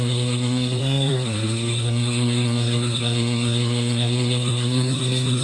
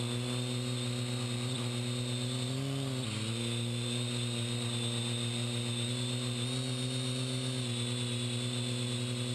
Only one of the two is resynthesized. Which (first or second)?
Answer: first